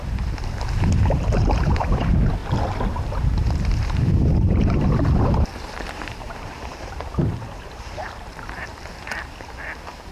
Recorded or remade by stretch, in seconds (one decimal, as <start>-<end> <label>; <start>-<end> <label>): 0.0-2.4 remade; 2.4-3.3 recorded; 3.3-8.7 remade; 8.7-10.1 recorded